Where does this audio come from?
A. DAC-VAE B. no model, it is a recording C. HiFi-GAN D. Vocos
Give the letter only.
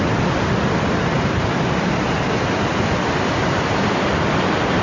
B